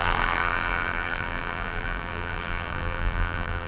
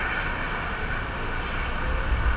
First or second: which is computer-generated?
first